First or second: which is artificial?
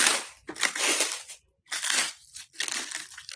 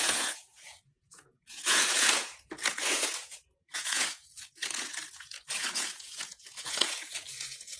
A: second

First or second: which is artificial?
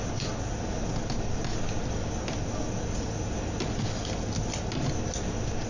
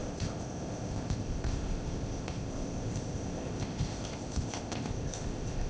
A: second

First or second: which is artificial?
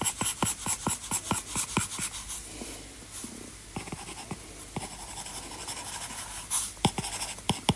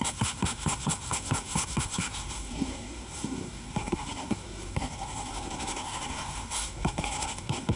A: second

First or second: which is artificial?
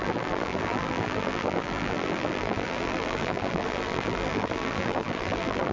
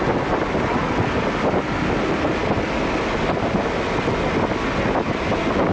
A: first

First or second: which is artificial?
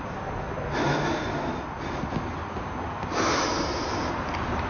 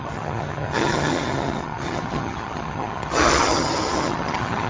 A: second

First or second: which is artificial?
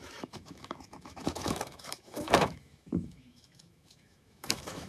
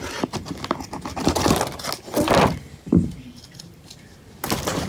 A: first